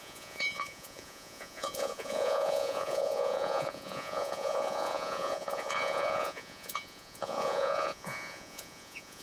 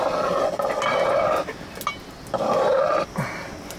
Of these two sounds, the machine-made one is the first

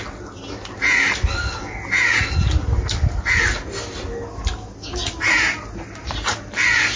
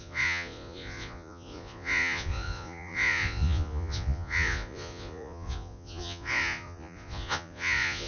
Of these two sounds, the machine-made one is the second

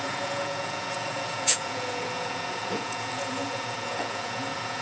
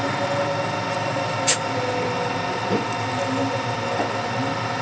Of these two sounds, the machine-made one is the first